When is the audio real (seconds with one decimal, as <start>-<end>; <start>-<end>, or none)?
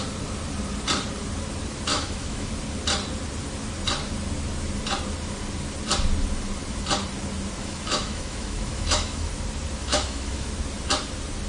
0.0-1.9; 2.5-7.6; 9.3-9.8; 10.5-11.5